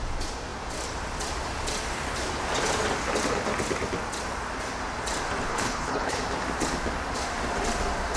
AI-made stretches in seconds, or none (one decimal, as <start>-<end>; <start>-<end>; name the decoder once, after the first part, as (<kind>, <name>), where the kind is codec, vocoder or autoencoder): 5.5-6.2 (codec, HILCodec)